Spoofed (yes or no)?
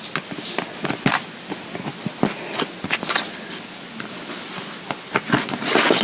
no